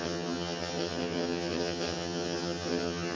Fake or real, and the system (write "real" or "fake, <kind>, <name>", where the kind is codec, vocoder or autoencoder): fake, vocoder, HiFi-GAN